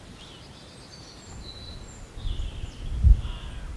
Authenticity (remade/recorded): recorded